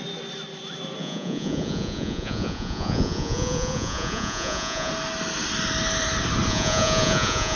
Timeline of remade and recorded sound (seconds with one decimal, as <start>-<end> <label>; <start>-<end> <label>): 0.0-1.0 recorded; 1.0-4.9 remade; 4.9-6.5 recorded; 6.5-7.6 remade